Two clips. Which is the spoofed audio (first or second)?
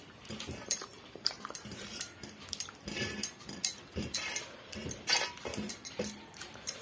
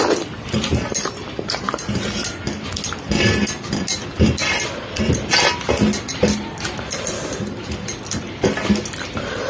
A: first